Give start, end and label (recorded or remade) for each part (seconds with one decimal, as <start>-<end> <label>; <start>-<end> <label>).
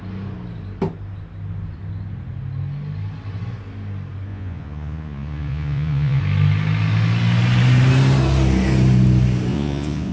0.0-4.3 recorded; 4.3-6.2 remade; 6.2-9.5 recorded; 9.5-10.1 remade